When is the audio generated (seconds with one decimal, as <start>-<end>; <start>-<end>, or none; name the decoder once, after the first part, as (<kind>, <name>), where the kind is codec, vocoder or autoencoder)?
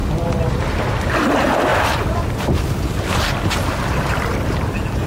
1.7-3.4 (vocoder, BigVGAN v2)